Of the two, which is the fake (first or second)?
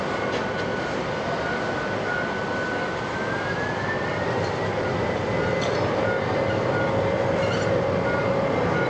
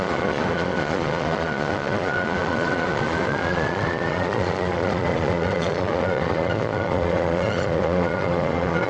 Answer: second